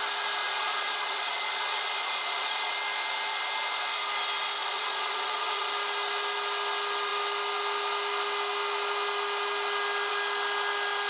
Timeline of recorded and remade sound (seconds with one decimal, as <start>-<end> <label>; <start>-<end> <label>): 0.0-0.4 recorded; 0.4-2.7 remade; 2.7-4.6 recorded; 4.6-5.7 remade; 5.7-11.1 recorded